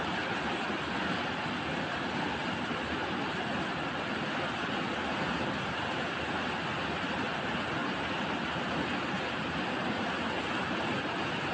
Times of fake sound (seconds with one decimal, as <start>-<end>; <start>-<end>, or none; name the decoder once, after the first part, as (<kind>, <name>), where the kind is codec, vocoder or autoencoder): none